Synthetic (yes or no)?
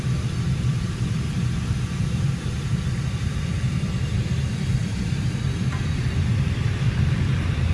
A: yes